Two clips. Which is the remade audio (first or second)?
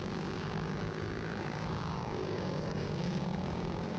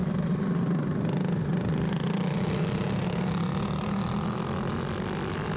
first